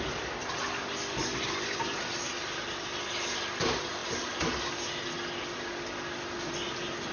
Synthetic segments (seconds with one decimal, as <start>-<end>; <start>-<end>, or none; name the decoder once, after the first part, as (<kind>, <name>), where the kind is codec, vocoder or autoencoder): none